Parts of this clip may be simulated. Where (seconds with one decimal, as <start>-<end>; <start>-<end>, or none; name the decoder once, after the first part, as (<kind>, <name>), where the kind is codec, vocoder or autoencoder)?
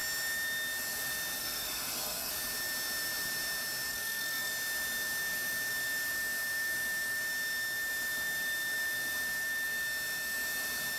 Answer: 1.4-2.3 (codec, SNAC); 3.9-4.5